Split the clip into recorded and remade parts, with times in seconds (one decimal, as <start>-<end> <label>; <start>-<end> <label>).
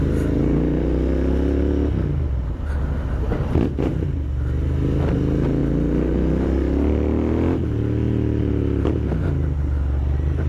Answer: 0.0-10.5 recorded